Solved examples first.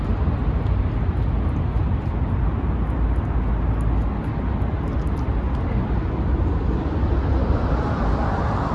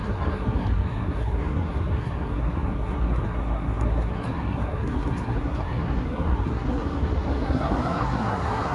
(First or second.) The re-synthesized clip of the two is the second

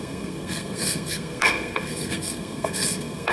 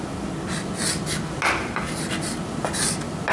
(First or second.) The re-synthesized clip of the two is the first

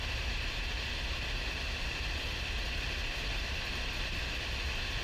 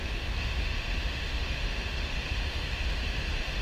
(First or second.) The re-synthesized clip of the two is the second